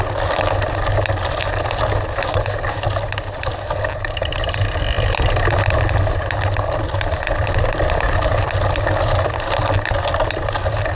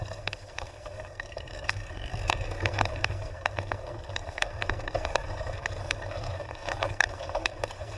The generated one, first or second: second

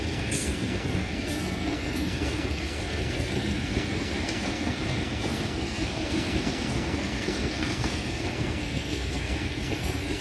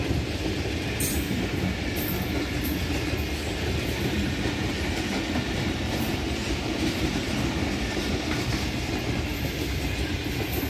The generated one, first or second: first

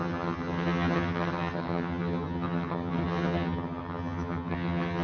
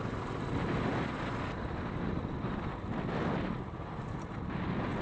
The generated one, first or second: first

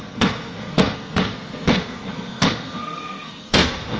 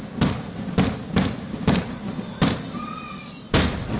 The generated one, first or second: first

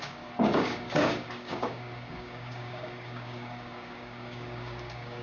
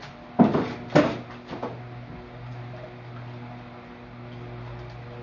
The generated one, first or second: first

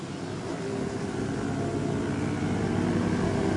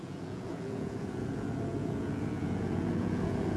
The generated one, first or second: second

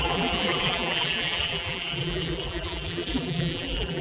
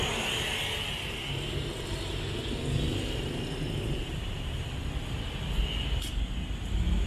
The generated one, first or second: first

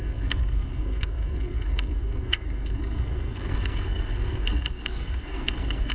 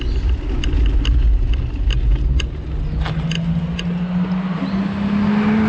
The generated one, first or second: first